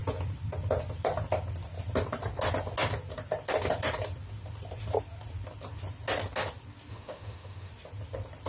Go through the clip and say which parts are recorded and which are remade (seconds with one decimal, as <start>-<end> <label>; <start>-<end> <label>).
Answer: 0.0-6.9 recorded; 6.9-7.7 remade; 7.7-8.5 recorded

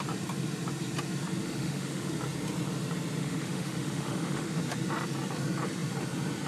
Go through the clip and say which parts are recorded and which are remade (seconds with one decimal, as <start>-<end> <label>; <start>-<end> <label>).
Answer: 0.0-1.4 recorded; 1.4-2.1 remade; 2.1-3.2 recorded; 3.2-4.6 remade; 4.6-6.5 recorded

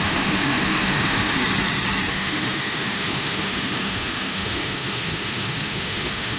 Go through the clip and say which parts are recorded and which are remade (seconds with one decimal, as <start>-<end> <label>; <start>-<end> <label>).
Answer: 0.0-1.4 remade; 1.4-2.1 recorded; 2.1-6.4 remade

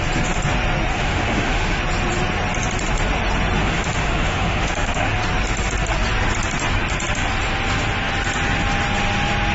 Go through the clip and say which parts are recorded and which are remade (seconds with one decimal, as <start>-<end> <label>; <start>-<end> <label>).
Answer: 0.0-0.9 recorded; 0.9-1.8 remade; 1.8-3.6 recorded; 3.6-5.1 remade; 5.1-9.5 recorded

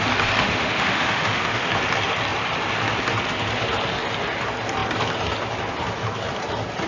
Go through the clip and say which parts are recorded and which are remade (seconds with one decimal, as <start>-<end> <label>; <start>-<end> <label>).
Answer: 0.0-0.4 recorded; 0.4-1.7 remade; 1.7-6.9 recorded

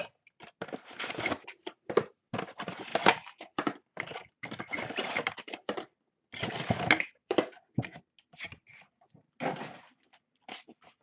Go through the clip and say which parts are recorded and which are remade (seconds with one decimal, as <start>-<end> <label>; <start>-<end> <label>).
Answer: 0.0-11.0 recorded

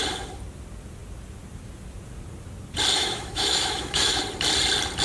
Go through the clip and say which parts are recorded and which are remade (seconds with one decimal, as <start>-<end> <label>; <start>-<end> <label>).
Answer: 0.0-2.9 recorded; 2.9-4.2 remade; 4.2-5.0 recorded